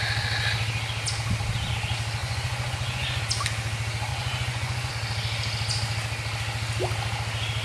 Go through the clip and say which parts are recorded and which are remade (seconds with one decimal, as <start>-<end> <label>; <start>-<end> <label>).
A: 0.0-2.2 recorded; 2.2-3.2 remade; 3.2-4.1 recorded; 4.1-4.9 remade; 4.9-7.6 recorded